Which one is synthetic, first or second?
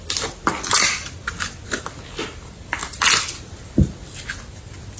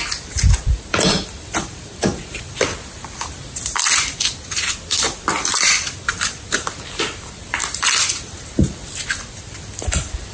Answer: second